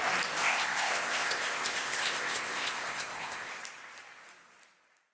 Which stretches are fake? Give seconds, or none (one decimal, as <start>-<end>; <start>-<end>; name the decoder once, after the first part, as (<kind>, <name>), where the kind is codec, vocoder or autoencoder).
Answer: 0.4-3.5 (codec, ZipCodec)